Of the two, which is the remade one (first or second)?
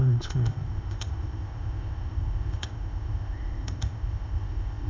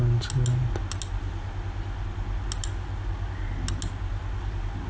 first